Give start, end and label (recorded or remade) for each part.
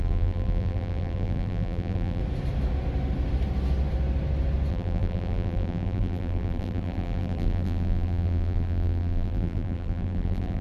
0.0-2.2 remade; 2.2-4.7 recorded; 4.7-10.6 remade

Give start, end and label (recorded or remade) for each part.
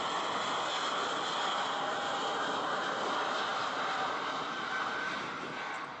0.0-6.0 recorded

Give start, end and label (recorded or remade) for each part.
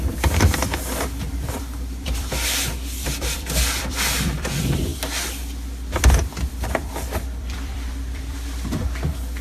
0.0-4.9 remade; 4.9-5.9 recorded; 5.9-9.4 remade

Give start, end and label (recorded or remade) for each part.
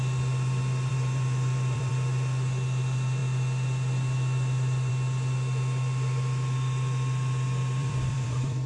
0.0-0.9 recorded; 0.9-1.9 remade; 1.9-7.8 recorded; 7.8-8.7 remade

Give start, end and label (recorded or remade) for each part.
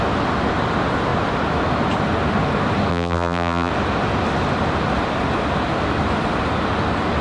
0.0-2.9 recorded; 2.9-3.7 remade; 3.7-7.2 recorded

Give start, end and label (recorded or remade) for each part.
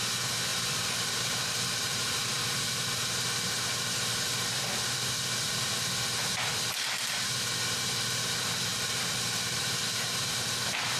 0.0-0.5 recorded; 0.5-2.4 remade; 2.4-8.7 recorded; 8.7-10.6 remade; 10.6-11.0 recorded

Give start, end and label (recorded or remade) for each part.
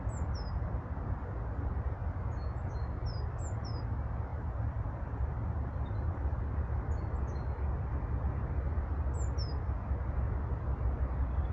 0.0-4.3 recorded; 4.3-6.4 remade; 6.4-11.5 recorded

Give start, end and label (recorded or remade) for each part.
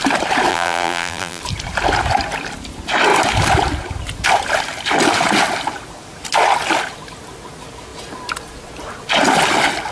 0.0-0.5 recorded; 0.5-1.4 remade; 1.4-9.9 recorded